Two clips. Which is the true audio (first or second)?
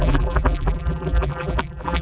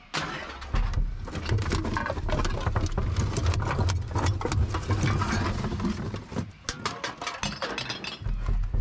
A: second